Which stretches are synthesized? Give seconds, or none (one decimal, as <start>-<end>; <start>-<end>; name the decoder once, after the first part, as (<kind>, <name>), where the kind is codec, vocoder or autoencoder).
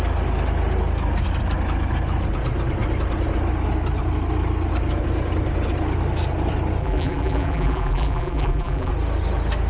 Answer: 6.8-8.9 (vocoder, BigVGAN v2)